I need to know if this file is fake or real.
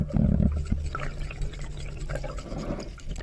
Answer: real